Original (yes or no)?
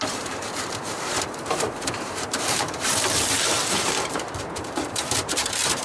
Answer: no